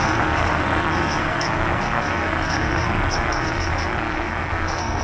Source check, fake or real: fake